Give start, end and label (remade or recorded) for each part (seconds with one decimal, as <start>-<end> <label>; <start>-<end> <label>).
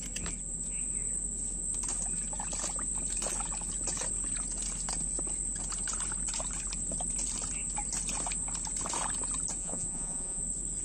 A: 0.0-9.6 recorded; 9.6-10.4 remade; 10.4-10.8 recorded